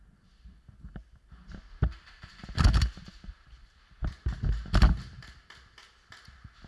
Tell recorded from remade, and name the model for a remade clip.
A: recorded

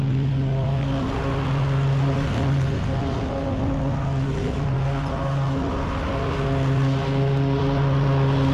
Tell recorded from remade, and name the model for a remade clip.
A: recorded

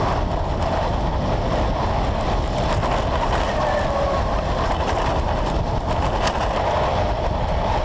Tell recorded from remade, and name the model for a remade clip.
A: recorded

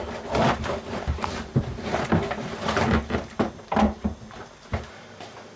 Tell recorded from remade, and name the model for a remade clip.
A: remade, vocoder, BigVGAN v2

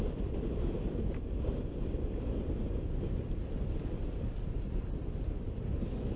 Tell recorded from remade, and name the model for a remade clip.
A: recorded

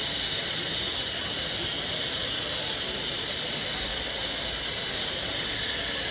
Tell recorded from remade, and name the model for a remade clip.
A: recorded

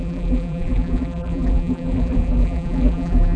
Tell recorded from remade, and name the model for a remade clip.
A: remade, vocoder, BigVGAN v2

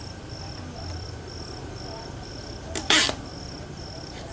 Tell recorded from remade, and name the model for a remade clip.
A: remade, vocoder, BigVGAN v2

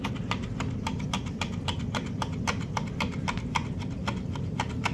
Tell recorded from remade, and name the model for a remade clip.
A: recorded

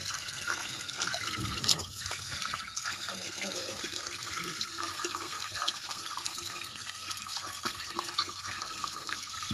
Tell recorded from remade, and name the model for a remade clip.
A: remade, codec, SNAC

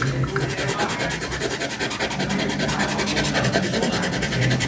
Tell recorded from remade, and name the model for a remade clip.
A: recorded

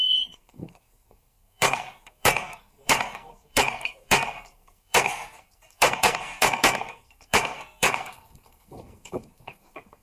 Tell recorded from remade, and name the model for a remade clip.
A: remade, codec, SNAC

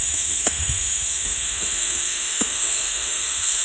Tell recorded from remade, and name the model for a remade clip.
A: remade, autoencoder, DAC-VAE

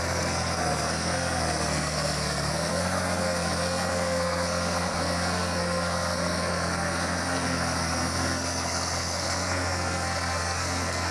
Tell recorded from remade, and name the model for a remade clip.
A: remade, codec, SNAC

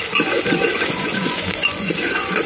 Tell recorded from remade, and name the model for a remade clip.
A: remade, vocoder, Vocos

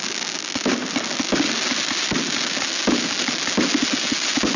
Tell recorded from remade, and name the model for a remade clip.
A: recorded